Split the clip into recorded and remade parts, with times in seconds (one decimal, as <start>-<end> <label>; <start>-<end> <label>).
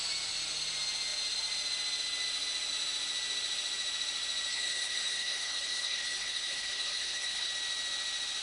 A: 0.0-4.5 recorded; 4.5-7.5 remade; 7.5-8.4 recorded